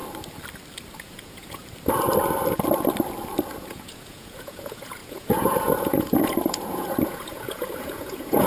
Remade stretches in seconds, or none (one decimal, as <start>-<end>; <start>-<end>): 1.0-1.6; 3.6-8.5